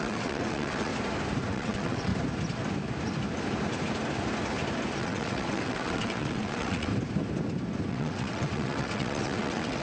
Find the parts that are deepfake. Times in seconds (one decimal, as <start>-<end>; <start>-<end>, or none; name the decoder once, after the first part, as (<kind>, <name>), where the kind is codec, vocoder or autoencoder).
0.0-0.9 (vocoder, WaveNeXt); 1.5-2.1; 5.0-6.9; 7.9-9.8